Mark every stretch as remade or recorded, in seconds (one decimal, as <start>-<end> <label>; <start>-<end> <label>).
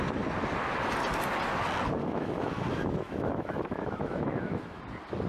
0.0-2.0 recorded; 2.0-4.8 remade; 4.8-5.3 recorded